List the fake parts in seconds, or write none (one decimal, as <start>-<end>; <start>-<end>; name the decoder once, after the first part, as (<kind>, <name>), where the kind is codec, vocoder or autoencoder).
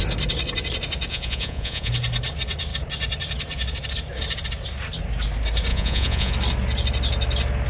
1.1-1.9 (vocoder, Vocos); 5.7-6.3